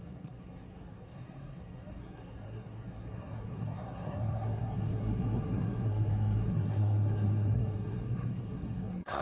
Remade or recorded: remade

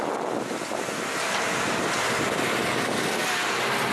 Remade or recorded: recorded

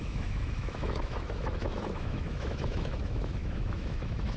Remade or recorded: remade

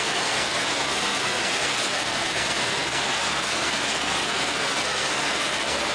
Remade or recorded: remade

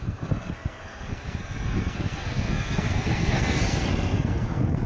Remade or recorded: remade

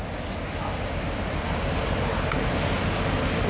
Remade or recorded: recorded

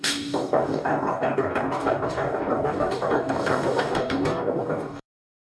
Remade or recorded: remade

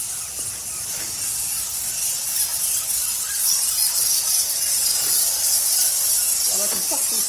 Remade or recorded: recorded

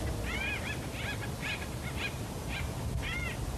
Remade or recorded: recorded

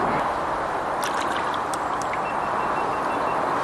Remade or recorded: recorded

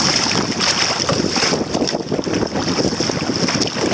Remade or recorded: recorded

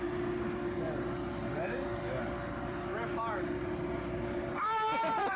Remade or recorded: recorded